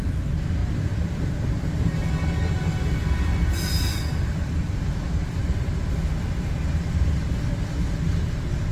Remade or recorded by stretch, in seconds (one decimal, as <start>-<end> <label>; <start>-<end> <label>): 0.0-0.6 recorded; 0.6-1.8 remade; 1.8-3.0 recorded; 3.0-5.0 remade; 5.0-8.7 recorded